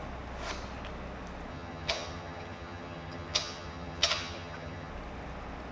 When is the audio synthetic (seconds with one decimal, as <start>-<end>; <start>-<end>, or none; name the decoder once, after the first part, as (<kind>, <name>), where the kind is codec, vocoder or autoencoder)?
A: 1.5-4.9 (vocoder, HiFi-GAN)